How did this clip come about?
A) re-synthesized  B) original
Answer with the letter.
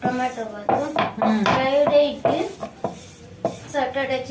B